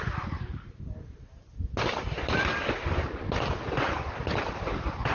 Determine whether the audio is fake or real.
real